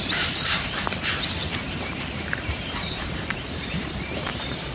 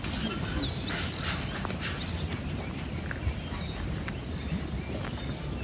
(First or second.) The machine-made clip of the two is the first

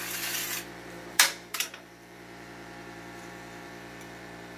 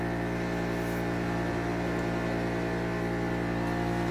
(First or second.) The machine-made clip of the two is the first